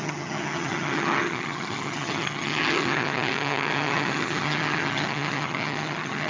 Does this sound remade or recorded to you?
remade